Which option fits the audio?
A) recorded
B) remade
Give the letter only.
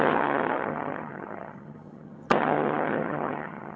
B